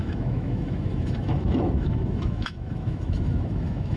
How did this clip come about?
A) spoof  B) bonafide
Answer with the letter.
A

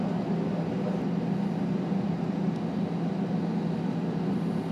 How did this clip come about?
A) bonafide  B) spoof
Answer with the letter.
A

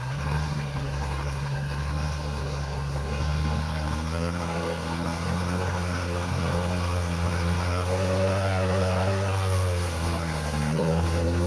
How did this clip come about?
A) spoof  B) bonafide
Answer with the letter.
A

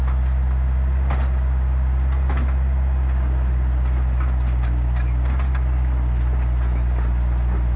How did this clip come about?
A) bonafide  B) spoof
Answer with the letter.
A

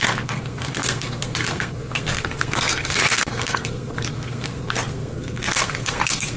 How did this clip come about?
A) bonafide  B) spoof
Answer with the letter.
B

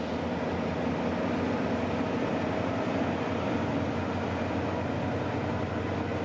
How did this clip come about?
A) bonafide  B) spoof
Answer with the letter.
A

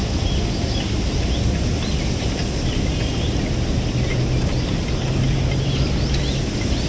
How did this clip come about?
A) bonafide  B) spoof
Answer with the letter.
A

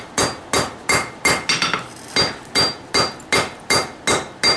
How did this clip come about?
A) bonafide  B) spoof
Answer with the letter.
A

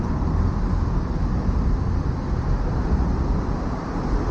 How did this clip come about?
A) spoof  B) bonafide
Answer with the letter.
B